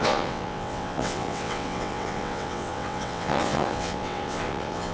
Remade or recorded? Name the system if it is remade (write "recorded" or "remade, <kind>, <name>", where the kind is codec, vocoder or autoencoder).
remade, vocoder, WaveNeXt